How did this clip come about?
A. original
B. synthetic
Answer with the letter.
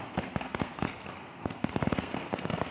B